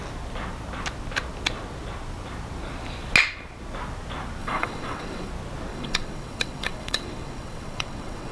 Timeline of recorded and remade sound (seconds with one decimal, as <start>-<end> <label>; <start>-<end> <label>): 0.0-4.4 recorded; 4.4-5.3 remade; 5.3-5.7 recorded; 5.7-8.3 remade